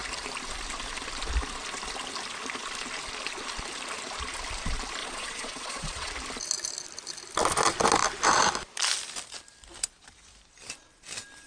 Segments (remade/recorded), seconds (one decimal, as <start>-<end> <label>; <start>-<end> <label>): 0.0-5.0 recorded; 5.0-6.1 remade; 6.1-11.5 recorded